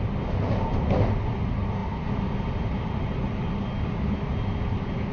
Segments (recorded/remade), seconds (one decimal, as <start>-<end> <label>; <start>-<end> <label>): 0.0-5.1 recorded